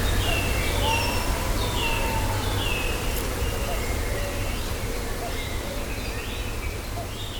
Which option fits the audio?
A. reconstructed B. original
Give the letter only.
B